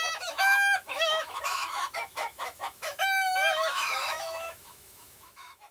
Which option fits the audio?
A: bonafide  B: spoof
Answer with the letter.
B